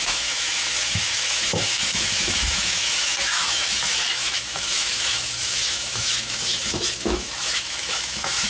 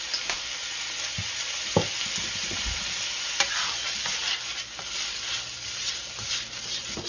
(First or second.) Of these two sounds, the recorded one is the second